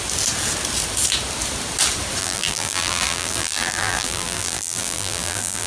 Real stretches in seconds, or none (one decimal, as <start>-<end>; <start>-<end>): 0.0-2.2